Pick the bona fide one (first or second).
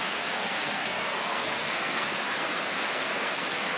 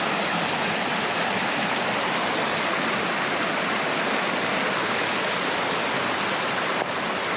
second